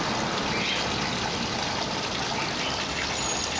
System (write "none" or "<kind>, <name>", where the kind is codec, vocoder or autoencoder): none